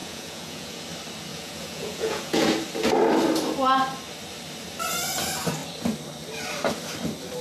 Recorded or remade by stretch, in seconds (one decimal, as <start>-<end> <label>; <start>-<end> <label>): 0.0-0.8 remade; 0.8-1.3 recorded; 1.3-2.5 remade; 2.5-7.4 recorded